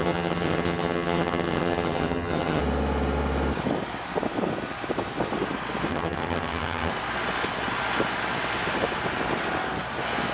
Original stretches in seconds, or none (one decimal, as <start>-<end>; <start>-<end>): 2.6-5.9; 6.9-10.3